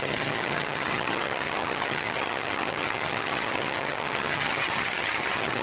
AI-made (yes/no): yes